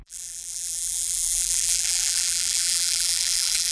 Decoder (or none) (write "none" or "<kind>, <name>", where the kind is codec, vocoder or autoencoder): vocoder, BigVGAN v2